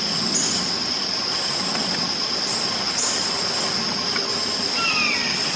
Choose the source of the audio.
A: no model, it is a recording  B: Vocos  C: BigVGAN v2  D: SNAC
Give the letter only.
A